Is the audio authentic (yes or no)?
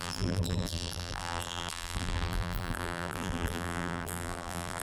no